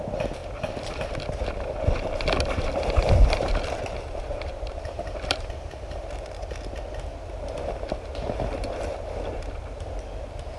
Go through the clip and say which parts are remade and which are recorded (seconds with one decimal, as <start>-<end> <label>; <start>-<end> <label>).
0.0-2.8 recorded; 2.8-6.0 remade; 6.0-10.6 recorded